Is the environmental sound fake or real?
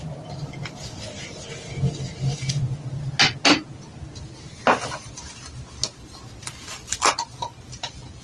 real